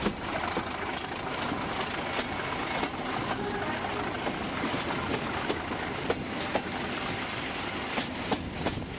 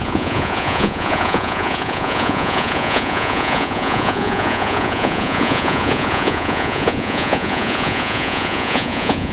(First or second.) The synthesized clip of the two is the second